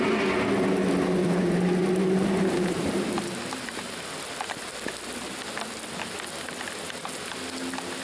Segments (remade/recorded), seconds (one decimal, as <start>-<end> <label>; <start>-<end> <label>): 0.0-1.2 recorded; 1.2-3.1 remade; 3.1-8.0 recorded